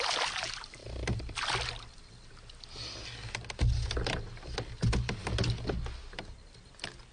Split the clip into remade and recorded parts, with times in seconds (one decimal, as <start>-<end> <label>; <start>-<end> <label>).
0.0-7.1 recorded